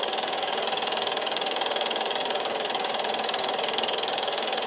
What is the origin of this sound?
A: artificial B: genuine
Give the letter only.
A